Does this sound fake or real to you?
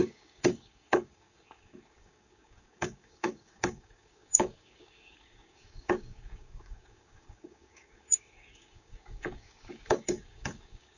fake